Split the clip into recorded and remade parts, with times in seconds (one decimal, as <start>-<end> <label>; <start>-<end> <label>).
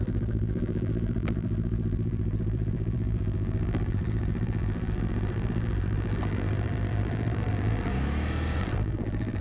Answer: 0.0-7.9 remade; 7.9-8.6 recorded; 8.6-9.4 remade